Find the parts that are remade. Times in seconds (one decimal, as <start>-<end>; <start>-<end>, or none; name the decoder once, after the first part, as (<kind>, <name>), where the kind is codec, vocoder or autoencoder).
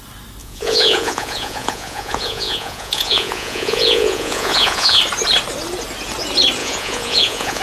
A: 0.4-5.0 (vocoder, Vocos); 6.6-7.6